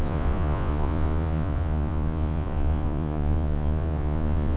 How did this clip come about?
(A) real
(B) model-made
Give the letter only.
B